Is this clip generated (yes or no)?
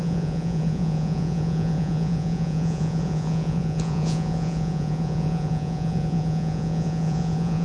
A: yes